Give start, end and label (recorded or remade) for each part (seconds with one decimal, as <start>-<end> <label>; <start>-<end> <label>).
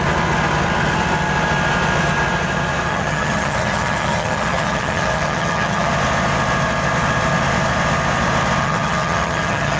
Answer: 0.0-2.9 recorded; 2.9-5.9 remade; 5.9-8.6 recorded; 8.6-9.8 remade